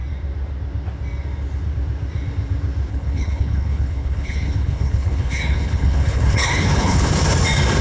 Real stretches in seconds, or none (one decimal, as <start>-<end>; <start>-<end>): 0.0-2.9; 7.1-7.8